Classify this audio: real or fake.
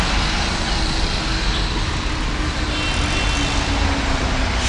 real